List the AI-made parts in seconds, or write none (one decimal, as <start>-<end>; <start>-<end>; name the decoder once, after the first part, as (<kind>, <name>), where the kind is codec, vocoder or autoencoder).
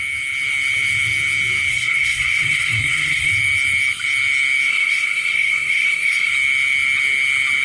1.7-3.3 (codec, SNAC); 4.7-6.3